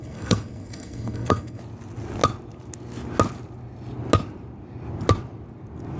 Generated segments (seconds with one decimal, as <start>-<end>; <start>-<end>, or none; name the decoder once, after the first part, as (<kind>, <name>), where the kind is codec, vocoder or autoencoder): 0.0-1.6 (codec, SNAC)